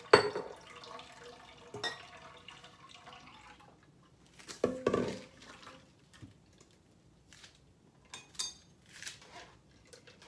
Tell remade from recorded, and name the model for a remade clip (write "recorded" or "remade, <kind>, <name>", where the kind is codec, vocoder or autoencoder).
recorded